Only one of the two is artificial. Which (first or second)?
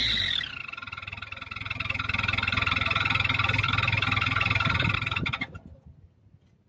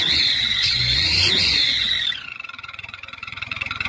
second